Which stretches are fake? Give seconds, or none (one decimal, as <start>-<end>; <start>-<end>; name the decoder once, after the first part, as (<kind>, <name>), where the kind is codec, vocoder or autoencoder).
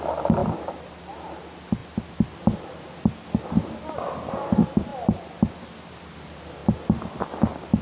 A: 0.4-1.0 (vocoder, BigVGAN v2)